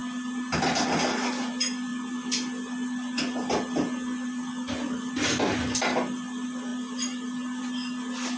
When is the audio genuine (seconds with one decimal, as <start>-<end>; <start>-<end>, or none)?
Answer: 0.0-8.4